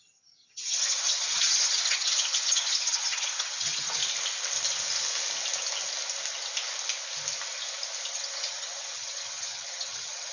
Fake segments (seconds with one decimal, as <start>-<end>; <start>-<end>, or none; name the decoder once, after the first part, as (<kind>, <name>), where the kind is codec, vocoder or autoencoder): 0.0-4.0 (vocoder, HiFi-GAN); 8.1-10.3